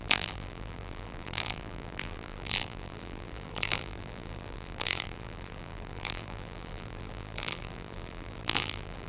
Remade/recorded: remade